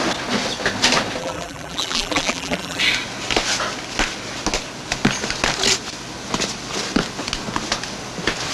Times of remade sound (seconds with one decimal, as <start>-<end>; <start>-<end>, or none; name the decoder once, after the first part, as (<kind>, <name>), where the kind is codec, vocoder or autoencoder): 1.2-2.8 (vocoder, BigVGAN v2)

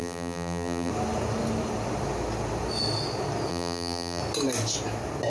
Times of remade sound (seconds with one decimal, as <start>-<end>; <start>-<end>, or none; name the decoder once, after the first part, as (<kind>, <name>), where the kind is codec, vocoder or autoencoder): 0.0-0.9 (vocoder, BigVGAN v2); 3.5-4.2

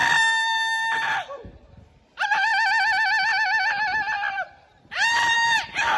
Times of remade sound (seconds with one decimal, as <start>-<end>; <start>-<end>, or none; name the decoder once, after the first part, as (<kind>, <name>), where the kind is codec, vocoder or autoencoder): 1.7-2.5 (vocoder, BigVGAN v2); 4.8-6.0